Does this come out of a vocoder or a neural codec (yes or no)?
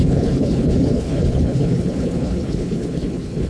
yes